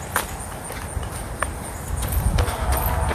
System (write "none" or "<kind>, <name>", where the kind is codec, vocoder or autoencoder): none